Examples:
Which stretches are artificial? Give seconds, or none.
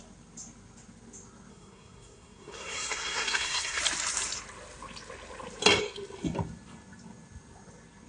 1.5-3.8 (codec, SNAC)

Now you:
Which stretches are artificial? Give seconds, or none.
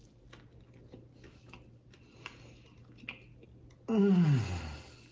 none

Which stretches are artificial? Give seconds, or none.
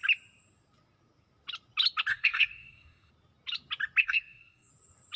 2.1-3.1 (codec, SNAC); 4.0-4.7